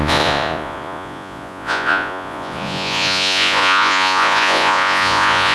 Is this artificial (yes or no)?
yes